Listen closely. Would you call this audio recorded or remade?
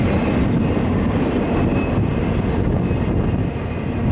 recorded